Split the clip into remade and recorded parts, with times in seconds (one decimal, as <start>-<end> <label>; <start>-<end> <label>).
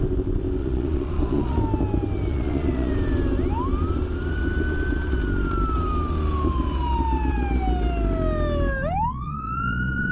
0.0-0.6 recorded; 0.6-1.6 remade; 1.6-2.3 recorded; 2.3-2.9 remade; 2.9-9.1 recorded; 9.1-10.1 remade